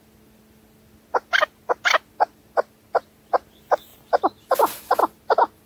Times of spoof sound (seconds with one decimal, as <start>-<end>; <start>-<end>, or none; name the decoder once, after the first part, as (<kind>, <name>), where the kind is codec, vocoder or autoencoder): 3.9-4.5 (vocoder, BigVGAN v2)